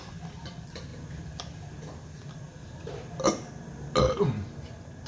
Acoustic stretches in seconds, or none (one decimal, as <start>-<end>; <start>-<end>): 0.0-5.1